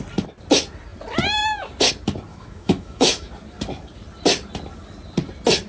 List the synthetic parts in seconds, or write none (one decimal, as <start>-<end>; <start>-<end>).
2.3-3.3